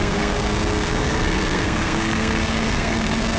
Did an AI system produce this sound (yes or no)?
yes